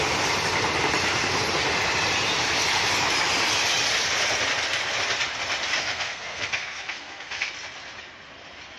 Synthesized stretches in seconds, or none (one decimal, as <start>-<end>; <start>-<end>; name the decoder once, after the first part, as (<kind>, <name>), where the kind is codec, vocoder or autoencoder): 5.8-7.5 (codec, SNAC)